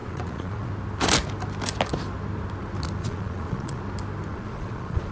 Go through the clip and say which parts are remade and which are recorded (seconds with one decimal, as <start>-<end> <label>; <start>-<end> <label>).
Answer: 0.0-0.7 remade; 0.7-3.0 recorded; 3.0-3.8 remade; 3.8-4.3 recorded; 4.3-5.1 remade